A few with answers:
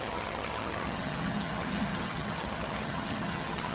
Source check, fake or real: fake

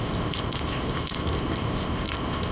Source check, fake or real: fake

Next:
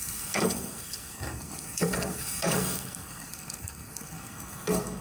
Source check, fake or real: fake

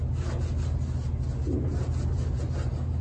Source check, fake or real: real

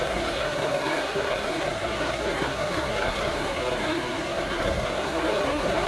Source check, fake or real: fake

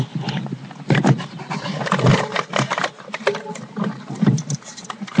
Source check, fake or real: real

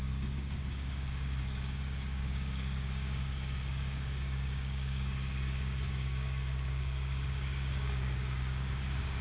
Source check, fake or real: fake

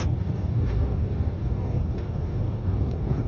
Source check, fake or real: fake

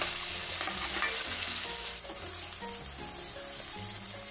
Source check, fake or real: real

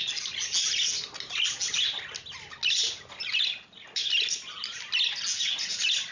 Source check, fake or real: real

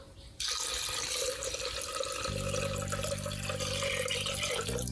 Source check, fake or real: real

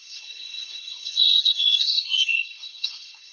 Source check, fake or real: fake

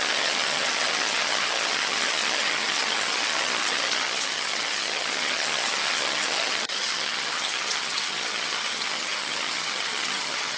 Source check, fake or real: fake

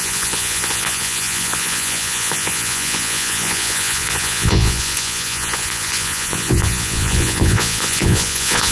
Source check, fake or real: fake